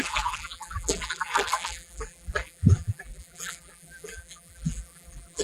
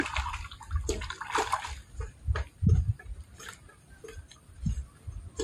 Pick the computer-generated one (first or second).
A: first